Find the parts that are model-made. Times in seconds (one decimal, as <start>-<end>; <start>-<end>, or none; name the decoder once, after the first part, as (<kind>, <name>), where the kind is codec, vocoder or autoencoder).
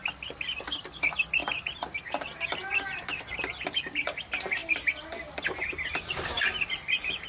1.4-3.3 (vocoder, BigVGAN v2); 4.6-5.4